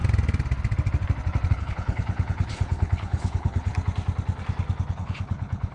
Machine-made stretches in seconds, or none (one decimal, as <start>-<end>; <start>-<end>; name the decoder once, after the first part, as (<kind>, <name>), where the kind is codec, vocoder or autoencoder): 1.5-3.7 (codec, HILCodec); 4.9-5.7